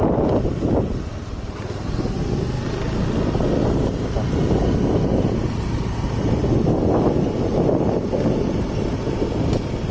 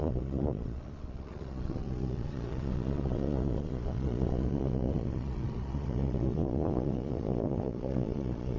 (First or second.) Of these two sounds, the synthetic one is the second